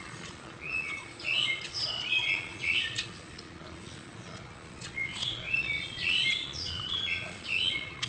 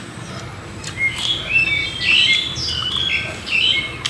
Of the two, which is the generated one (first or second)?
first